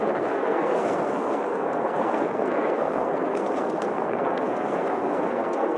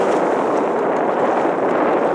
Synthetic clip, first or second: first